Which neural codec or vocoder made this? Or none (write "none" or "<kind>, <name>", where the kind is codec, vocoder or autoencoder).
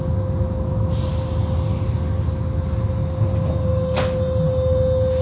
none